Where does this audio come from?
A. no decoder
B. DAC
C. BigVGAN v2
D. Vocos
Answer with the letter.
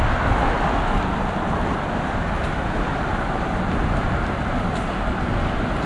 A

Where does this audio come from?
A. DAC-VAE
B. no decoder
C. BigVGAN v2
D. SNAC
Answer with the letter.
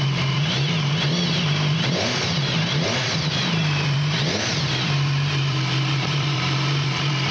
C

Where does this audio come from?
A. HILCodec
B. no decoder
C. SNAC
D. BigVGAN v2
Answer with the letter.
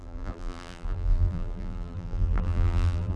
D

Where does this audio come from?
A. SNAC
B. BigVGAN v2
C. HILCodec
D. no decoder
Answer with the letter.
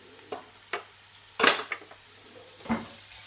D